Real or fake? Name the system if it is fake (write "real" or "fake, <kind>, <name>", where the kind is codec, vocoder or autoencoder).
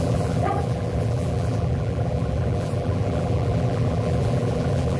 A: fake, vocoder, BigVGAN v2